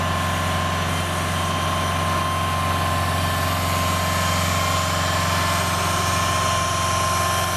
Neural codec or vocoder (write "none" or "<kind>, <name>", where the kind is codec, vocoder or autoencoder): none